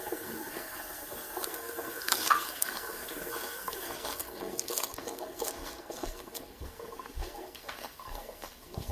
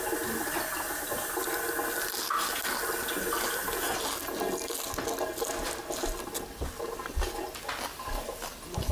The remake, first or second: first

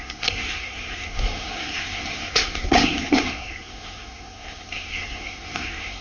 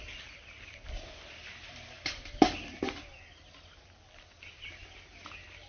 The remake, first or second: first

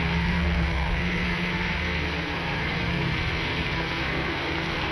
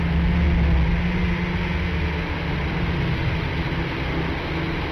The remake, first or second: first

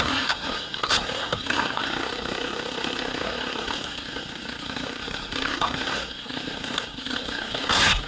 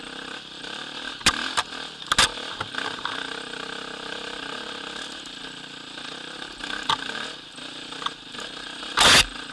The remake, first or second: first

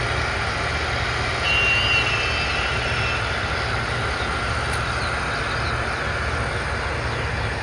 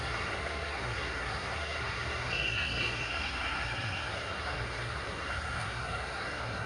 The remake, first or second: second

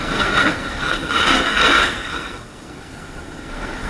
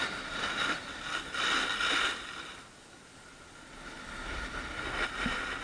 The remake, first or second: first